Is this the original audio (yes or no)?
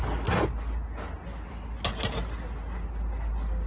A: yes